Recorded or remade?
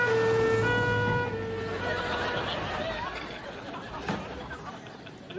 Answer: recorded